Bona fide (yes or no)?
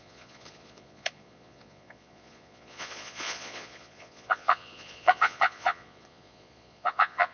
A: no